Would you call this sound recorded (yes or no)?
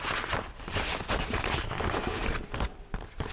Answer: yes